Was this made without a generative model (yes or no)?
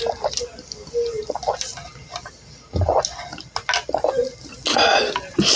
yes